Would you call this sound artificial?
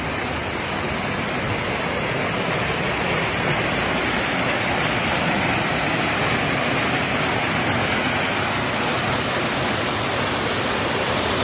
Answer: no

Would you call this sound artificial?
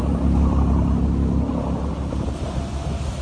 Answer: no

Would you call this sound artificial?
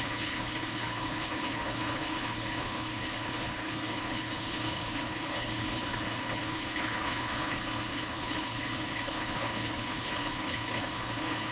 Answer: yes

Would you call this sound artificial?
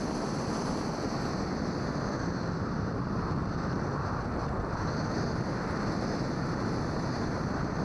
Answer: no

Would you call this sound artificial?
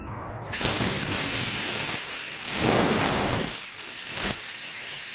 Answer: yes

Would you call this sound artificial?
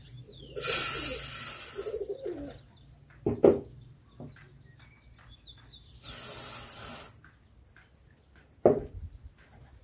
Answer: no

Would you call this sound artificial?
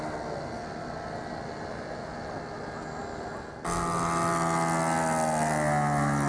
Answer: no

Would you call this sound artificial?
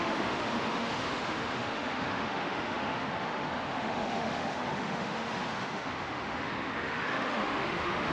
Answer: yes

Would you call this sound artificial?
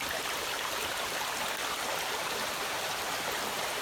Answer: no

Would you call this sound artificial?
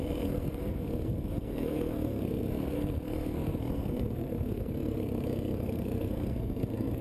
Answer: yes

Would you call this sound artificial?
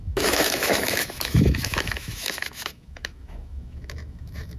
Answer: yes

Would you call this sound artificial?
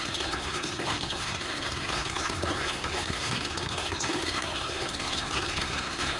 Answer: yes